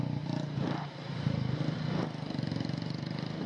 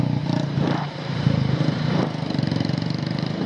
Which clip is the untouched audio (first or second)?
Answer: first